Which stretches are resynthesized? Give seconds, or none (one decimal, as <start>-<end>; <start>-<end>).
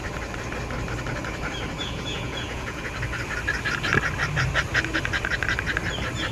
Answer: 1.8-2.9